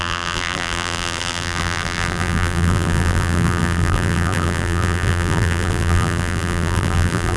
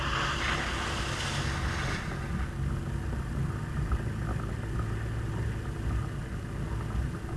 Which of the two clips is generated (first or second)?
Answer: first